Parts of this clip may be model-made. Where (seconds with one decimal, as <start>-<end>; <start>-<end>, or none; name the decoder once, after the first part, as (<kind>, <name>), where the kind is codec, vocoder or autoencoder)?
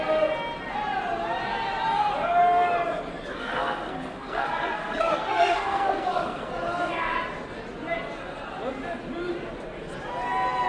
3.3-6.5 (codec, SNAC)